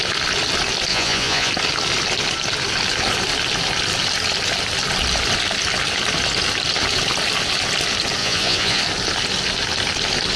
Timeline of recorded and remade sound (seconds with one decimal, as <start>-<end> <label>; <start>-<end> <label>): 0.0-0.9 recorded; 0.9-1.5 remade; 1.5-8.2 recorded; 8.2-8.8 remade; 8.8-10.4 recorded